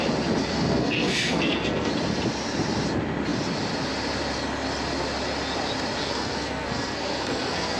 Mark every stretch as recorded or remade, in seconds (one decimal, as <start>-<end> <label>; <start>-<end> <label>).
0.0-0.4 recorded; 0.4-1.9 remade; 1.9-6.0 recorded; 6.0-7.8 remade